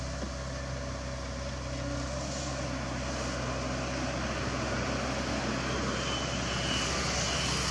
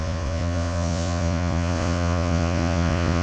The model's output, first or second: second